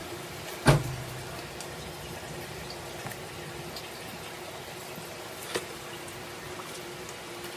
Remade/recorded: recorded